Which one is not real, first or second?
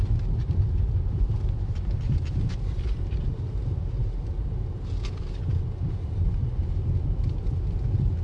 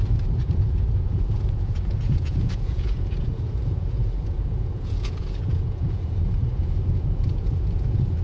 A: second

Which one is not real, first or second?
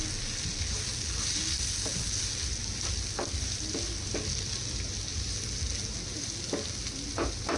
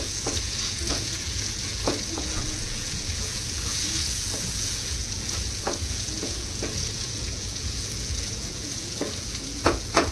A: second